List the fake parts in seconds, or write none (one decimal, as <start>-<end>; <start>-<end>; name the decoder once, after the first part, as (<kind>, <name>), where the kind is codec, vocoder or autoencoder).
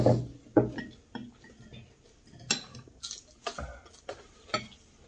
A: none